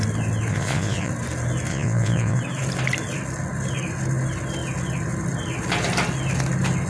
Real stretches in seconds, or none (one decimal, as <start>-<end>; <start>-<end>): 0.0-0.5; 1.1-1.7; 2.4-6.9